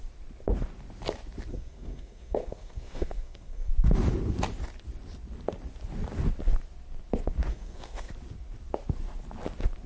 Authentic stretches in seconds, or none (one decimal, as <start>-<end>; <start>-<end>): 0.0-1.5; 3.7-7.5; 8.1-9.9